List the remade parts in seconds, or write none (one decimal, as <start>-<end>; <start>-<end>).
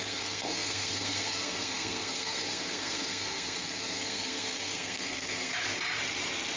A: 0.0-5.5